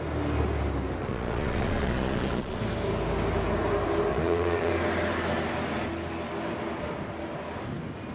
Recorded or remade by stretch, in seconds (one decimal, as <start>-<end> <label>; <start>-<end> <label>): 0.0-1.0 recorded; 1.0-2.6 remade; 2.6-4.1 recorded; 4.1-4.7 remade; 4.7-8.1 recorded